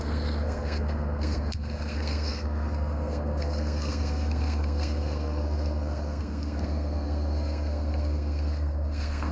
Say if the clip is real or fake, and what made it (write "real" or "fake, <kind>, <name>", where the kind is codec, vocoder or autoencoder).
fake, codec, SNAC